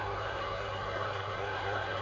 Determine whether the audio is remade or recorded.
remade